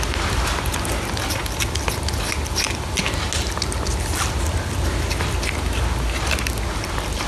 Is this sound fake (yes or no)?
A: no